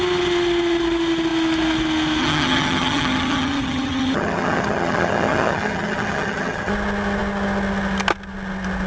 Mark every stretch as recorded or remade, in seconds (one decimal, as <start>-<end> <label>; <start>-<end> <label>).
0.0-2.2 recorded; 2.2-6.7 remade; 6.7-8.9 recorded